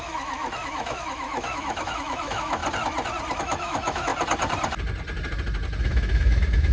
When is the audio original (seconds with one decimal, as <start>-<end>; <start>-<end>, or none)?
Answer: 2.6-3.4; 4.1-5.8